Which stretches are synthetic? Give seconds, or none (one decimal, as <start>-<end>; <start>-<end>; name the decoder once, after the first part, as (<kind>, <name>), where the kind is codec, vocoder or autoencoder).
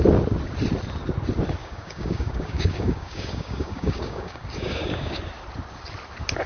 1.6-5.2 (codec, DAC)